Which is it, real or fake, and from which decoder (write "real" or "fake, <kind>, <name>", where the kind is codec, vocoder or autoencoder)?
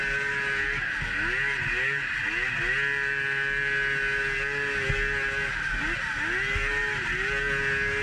real